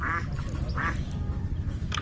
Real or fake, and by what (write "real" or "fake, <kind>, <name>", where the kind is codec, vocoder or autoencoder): real